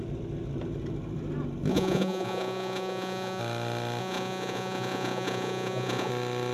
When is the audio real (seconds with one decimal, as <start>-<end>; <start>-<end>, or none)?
0.0-1.7; 3.4-4.0; 6.1-6.5